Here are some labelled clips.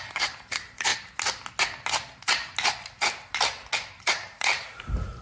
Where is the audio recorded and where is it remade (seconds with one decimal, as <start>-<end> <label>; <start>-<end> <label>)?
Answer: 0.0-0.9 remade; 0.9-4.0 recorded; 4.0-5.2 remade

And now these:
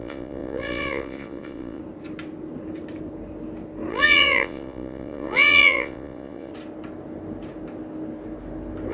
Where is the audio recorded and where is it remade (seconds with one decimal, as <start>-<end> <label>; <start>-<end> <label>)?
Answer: 0.0-1.8 remade; 1.8-3.9 recorded; 3.9-6.5 remade; 6.5-8.9 recorded

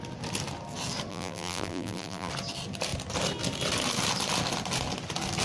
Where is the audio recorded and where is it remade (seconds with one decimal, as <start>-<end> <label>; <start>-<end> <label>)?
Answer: 0.0-1.1 recorded; 1.1-2.3 remade; 2.3-5.4 recorded